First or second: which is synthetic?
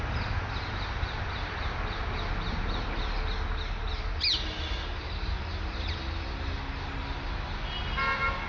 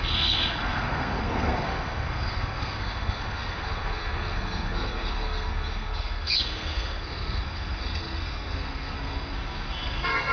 second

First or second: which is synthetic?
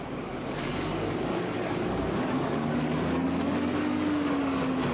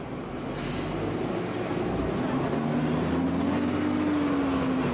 first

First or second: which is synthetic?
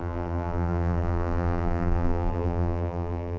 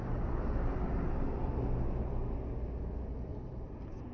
first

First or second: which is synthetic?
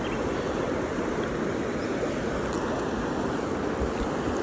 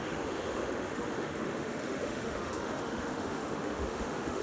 second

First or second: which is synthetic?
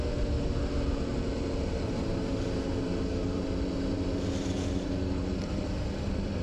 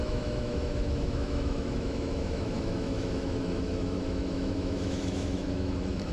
second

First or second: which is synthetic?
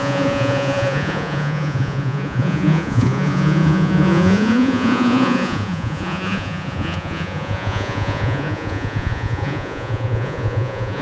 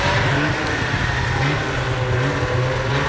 first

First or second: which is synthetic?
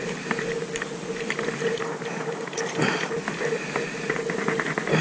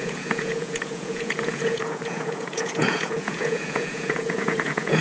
second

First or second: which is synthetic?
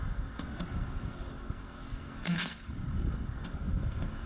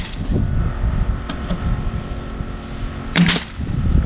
first